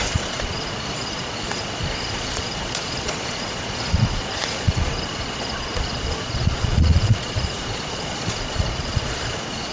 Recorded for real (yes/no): no